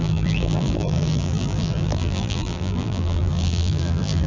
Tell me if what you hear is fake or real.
fake